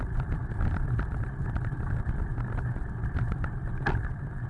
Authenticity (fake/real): real